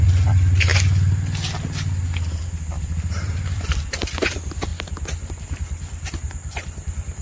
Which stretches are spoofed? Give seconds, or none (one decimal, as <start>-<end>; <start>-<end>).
0.0-0.7; 2.8-4.7; 5.3-7.2